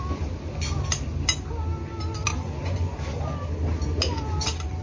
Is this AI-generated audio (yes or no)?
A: no